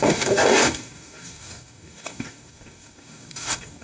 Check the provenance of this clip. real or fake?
fake